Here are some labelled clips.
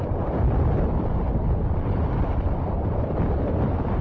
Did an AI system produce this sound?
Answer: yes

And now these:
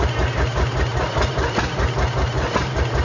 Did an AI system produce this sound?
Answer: no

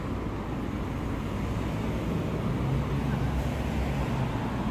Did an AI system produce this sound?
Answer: no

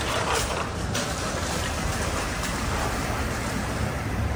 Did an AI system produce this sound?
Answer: yes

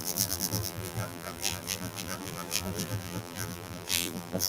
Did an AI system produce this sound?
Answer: yes